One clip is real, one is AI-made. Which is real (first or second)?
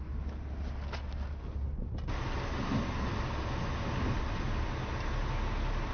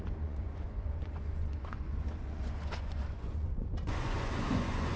first